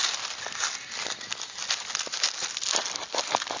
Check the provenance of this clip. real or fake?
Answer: real